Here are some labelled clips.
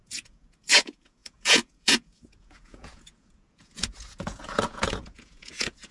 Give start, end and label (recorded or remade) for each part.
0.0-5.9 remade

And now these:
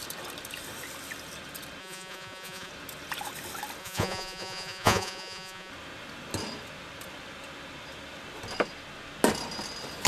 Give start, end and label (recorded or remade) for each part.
0.0-1.8 recorded; 1.8-2.7 remade; 2.7-3.8 recorded; 3.8-5.7 remade; 5.7-10.1 recorded

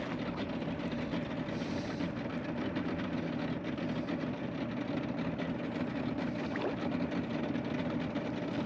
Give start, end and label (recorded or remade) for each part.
0.0-8.7 recorded

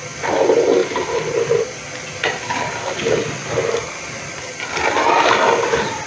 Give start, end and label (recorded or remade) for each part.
0.0-6.1 recorded